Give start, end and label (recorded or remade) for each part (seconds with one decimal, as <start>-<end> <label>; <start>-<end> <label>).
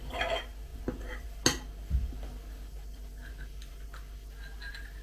0.0-5.0 recorded